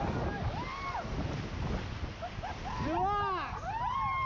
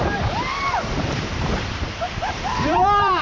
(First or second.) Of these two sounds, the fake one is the second